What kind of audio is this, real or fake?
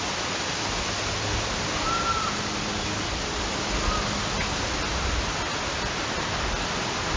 real